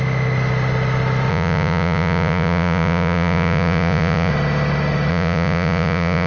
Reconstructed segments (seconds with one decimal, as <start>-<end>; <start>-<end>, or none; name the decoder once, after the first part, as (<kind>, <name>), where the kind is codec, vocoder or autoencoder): 1.3-4.3 (vocoder, Vocos); 5.1-6.3